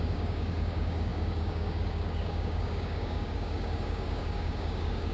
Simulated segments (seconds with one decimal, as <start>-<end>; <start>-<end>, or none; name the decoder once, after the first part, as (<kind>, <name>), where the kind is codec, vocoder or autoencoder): 0.0-5.1 (codec, DAC)